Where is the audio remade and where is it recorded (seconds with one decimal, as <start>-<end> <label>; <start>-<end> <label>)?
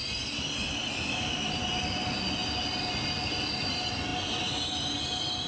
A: 0.0-5.5 recorded